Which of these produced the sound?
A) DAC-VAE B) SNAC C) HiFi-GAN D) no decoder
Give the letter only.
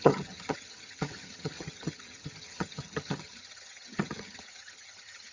C